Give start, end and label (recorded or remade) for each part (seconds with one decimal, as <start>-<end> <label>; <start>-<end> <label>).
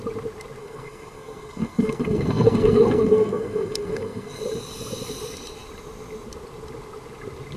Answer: 0.0-0.6 recorded; 0.6-4.4 remade; 4.4-7.6 recorded